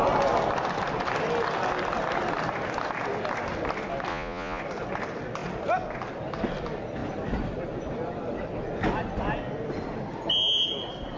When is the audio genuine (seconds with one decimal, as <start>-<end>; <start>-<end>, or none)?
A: 0.0-4.1; 4.6-11.2